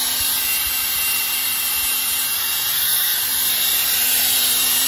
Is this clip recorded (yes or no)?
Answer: no